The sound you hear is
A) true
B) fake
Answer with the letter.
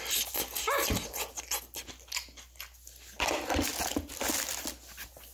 A